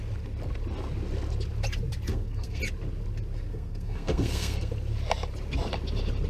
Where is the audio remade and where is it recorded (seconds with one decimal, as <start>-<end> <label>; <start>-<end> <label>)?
0.0-2.1 recorded; 2.1-2.6 remade; 2.6-3.5 recorded; 3.5-4.7 remade; 4.7-6.3 recorded